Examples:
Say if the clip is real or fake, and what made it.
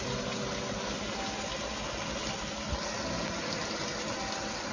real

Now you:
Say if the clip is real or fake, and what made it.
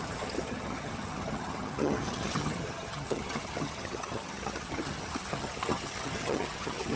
fake, vocoder, HiFi-GAN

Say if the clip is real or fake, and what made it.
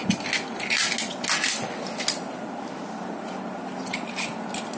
real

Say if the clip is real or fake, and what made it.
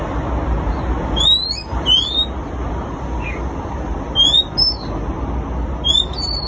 real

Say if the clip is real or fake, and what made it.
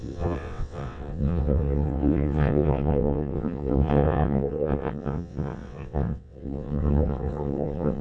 fake, vocoder, WaveNeXt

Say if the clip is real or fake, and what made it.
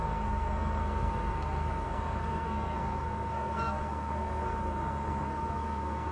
fake, codec, SNAC